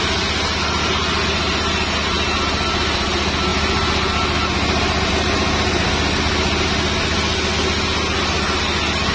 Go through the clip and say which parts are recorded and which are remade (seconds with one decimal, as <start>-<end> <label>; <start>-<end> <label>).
0.0-9.1 recorded